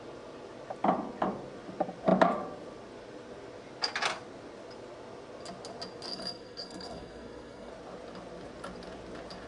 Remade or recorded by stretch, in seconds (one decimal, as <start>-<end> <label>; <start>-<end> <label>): 0.0-6.1 recorded; 6.1-7.7 remade; 7.7-9.5 recorded